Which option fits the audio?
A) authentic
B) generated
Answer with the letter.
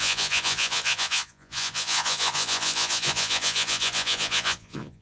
B